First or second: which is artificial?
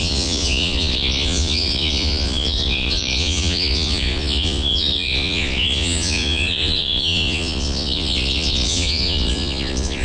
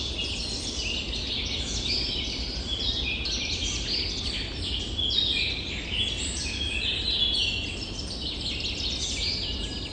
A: first